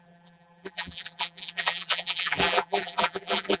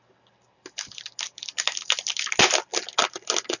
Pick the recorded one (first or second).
second